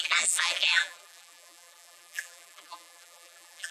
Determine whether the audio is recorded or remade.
remade